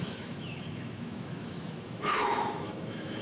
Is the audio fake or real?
fake